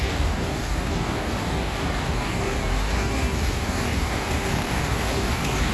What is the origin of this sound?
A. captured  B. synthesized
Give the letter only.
B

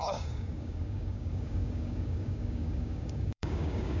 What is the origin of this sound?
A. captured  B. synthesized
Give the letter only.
B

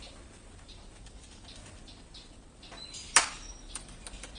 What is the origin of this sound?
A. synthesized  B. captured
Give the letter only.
B